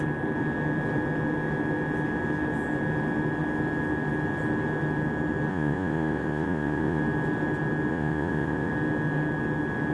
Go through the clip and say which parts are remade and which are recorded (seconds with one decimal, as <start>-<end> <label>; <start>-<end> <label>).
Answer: 0.0-5.5 recorded; 5.5-7.0 remade; 7.0-7.9 recorded; 7.9-8.7 remade; 8.7-9.9 recorded

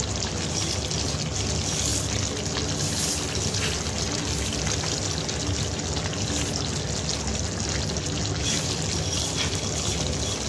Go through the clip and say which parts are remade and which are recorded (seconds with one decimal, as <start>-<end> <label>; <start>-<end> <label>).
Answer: 0.0-10.5 recorded

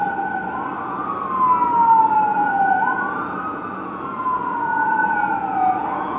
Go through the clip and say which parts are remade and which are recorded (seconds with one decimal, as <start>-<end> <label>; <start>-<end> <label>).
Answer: 0.0-2.3 recorded; 2.3-3.1 remade; 3.1-3.5 recorded; 3.5-6.2 remade

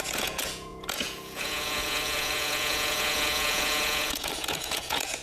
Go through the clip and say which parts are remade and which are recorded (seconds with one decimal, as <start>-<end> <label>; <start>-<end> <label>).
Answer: 0.0-5.2 remade

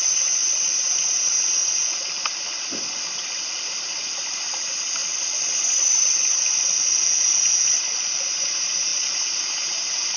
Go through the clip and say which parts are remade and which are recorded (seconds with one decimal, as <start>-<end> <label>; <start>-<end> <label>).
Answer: 0.0-10.2 recorded

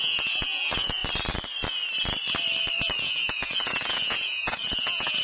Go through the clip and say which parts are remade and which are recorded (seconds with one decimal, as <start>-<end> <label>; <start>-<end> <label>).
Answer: 0.0-1.0 remade; 1.0-2.8 recorded; 2.8-5.2 remade

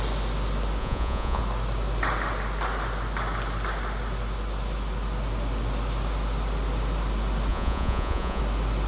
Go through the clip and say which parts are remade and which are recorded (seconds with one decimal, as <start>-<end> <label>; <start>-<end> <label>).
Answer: 0.0-0.8 recorded; 0.8-1.4 remade; 1.4-7.5 recorded; 7.5-8.4 remade; 8.4-8.9 recorded

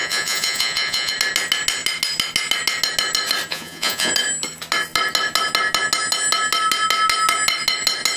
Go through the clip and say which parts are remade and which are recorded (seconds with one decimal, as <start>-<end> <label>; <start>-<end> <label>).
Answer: 0.0-1.1 remade; 1.1-3.5 recorded; 3.5-4.1 remade; 4.1-8.2 recorded